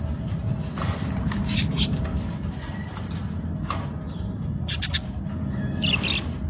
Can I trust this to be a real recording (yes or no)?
yes